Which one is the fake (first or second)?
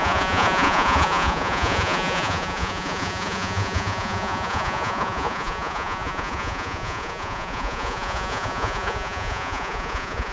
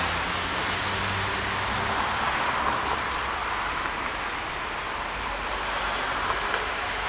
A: first